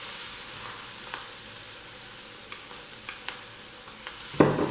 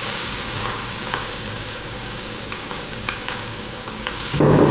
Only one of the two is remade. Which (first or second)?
second